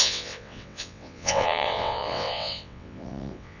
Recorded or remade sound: remade